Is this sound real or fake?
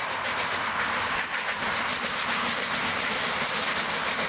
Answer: real